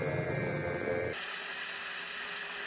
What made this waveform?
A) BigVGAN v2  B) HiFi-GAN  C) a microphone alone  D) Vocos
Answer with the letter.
C